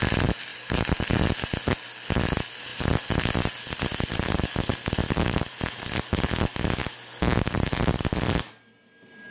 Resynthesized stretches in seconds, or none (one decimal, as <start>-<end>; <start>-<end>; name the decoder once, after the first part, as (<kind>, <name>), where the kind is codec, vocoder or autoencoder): 0.5-1.2 (vocoder, BigVGAN v2); 2.7-3.3; 5.0-5.6; 6.8-8.1